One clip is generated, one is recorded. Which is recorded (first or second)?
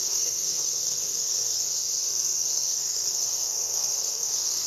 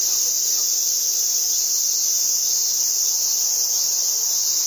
second